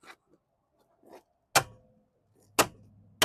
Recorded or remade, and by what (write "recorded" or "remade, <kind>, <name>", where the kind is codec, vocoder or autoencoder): recorded